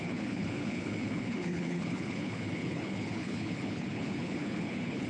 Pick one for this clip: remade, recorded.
remade